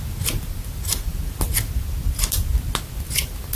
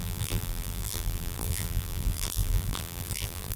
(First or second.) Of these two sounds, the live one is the first